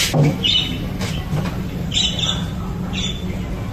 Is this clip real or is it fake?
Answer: real